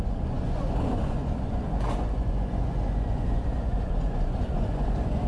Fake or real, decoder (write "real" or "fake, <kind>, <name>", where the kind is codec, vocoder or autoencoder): fake, vocoder, Vocos